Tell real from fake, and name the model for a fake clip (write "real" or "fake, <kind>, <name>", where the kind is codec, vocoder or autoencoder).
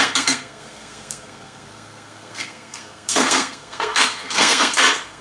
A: fake, codec, SNAC